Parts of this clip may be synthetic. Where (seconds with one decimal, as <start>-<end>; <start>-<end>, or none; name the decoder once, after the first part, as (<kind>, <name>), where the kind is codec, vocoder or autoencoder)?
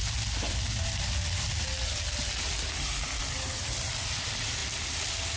none